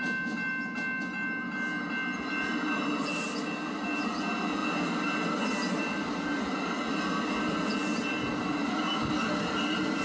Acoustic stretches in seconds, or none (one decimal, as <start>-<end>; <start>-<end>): 0.0-10.0

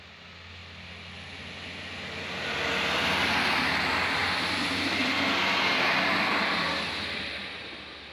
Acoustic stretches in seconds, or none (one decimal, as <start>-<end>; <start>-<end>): 0.0-8.1